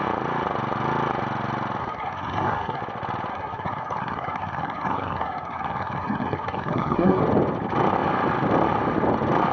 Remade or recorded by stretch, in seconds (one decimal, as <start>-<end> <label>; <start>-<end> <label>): 0.0-1.8 recorded; 1.8-2.8 remade; 2.8-3.3 recorded; 3.3-7.2 remade; 7.2-9.5 recorded